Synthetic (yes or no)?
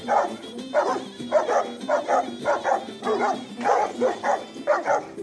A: no